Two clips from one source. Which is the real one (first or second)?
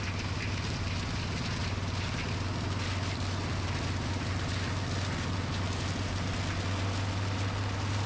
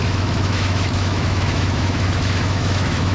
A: first